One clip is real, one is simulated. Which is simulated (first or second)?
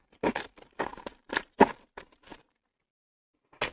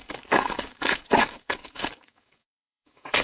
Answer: second